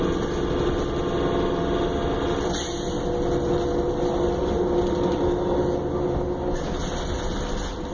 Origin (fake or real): real